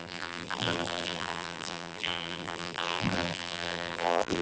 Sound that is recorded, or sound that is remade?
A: remade